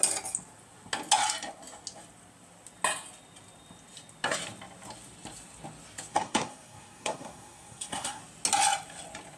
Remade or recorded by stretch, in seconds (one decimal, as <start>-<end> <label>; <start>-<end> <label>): 0.0-6.1 recorded; 6.1-8.2 remade; 8.2-9.4 recorded